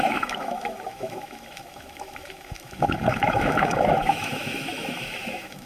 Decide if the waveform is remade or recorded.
remade